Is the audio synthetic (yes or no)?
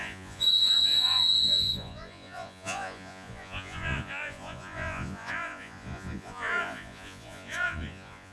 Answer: yes